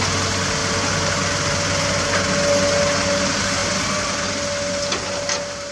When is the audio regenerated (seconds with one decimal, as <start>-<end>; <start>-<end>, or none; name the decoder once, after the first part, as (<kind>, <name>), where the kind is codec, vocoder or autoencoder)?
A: none

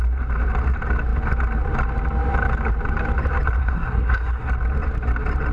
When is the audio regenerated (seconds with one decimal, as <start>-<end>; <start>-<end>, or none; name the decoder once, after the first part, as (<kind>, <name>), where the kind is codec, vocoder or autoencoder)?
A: 3.6-4.5 (codec, SNAC)

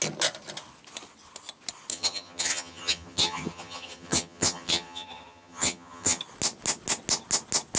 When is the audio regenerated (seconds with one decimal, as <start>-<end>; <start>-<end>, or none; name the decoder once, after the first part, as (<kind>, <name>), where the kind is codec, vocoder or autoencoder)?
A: 1.9-6.2 (vocoder, HiFi-GAN)